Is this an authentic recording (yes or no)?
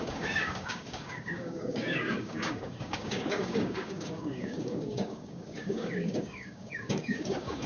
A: no